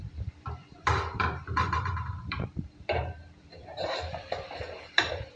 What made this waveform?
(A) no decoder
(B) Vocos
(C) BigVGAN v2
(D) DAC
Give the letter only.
C